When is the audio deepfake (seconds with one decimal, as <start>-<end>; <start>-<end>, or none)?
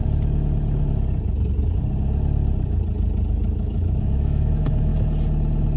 3.3-4.9